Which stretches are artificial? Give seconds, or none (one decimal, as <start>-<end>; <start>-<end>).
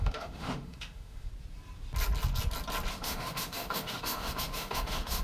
0.0-1.3; 2.9-5.2